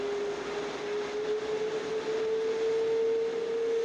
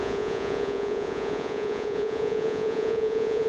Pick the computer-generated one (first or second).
second